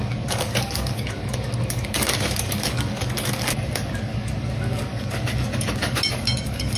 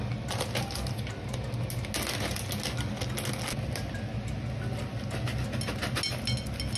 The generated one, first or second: first